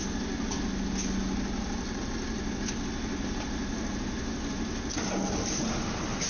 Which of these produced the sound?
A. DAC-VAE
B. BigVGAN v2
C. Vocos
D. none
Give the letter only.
D